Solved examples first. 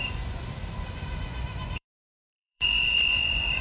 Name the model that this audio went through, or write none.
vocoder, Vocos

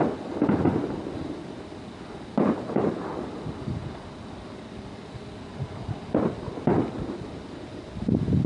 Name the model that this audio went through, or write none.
none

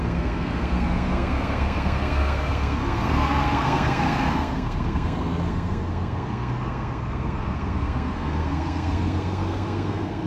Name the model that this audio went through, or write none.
codec, SNAC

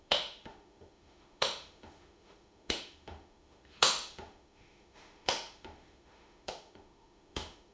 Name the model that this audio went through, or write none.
autoencoder, DAC-VAE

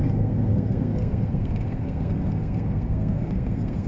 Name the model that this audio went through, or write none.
codec, SNAC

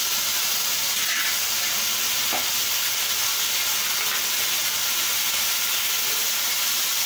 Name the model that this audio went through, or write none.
none